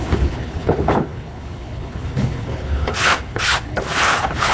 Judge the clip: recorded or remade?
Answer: remade